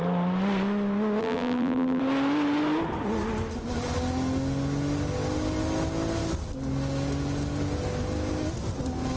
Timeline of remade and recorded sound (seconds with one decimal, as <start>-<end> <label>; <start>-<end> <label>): 0.0-1.2 recorded; 1.2-2.0 remade; 2.0-9.2 recorded